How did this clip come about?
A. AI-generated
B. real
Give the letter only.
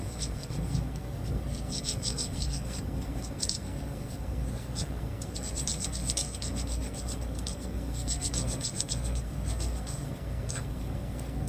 A